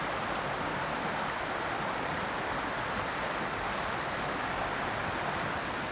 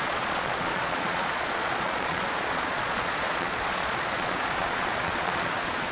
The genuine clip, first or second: first